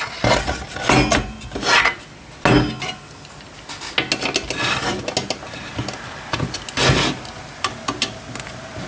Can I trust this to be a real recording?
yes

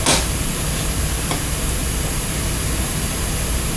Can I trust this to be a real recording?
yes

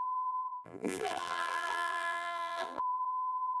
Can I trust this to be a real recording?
no